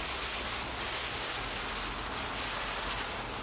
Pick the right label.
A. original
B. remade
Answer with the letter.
A